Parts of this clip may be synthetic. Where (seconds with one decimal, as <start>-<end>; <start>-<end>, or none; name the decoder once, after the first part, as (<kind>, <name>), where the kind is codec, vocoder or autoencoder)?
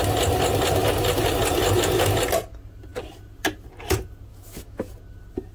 4.3-4.9 (autoencoder, DAC-VAE)